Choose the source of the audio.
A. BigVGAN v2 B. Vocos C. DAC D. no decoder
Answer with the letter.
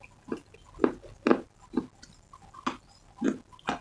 D